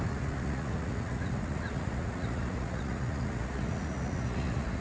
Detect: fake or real fake